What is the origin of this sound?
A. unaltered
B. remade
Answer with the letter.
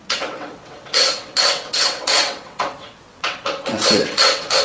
B